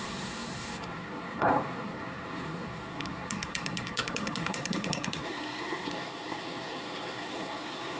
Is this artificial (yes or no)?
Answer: yes